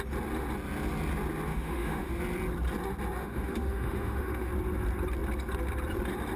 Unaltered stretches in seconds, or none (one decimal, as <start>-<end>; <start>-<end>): 0.0-1.5; 2.1-3.2; 4.5-6.4